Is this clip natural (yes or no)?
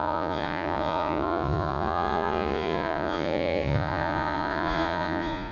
no